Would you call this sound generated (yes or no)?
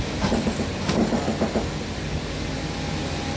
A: no